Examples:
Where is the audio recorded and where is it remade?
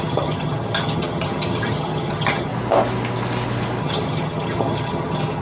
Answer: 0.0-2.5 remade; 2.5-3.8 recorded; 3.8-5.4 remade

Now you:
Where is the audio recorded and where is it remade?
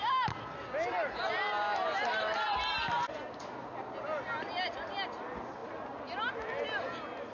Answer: 0.0-7.3 recorded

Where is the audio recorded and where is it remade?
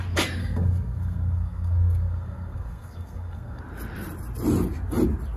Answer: 0.0-0.4 recorded; 0.4-3.6 remade; 3.6-5.4 recorded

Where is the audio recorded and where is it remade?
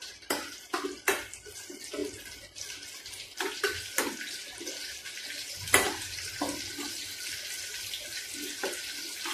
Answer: 0.0-9.3 recorded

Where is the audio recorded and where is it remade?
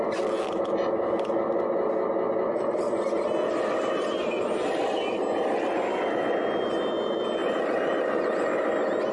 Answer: 0.0-7.4 recorded; 7.4-8.5 remade; 8.5-9.1 recorded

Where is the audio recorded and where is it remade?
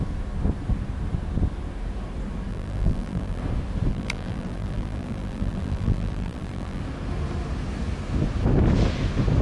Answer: 0.0-2.5 recorded; 2.5-3.4 remade; 3.4-3.9 recorded; 3.9-6.8 remade; 6.8-9.4 recorded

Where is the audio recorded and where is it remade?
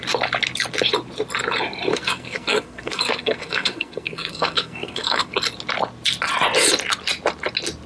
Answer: 0.0-1.9 recorded; 1.9-5.3 remade; 5.3-7.9 recorded